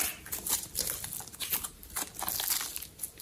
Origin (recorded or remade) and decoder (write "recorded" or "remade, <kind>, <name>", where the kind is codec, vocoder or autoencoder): recorded